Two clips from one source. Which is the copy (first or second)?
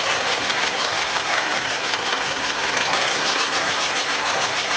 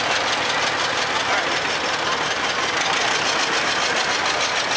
first